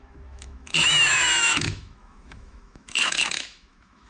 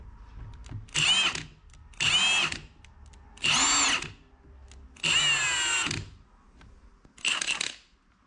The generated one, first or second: first